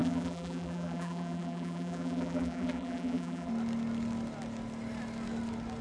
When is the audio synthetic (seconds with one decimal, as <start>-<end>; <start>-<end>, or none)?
0.0-3.5